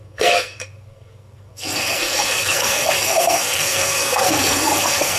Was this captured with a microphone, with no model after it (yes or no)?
no